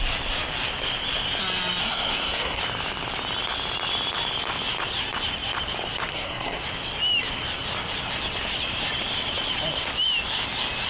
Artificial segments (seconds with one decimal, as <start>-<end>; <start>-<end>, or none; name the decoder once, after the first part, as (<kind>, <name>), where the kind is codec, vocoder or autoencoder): 1.8-2.6 (codec, SNAC); 6.1-6.6